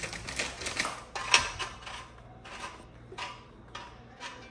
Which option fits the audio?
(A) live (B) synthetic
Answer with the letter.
A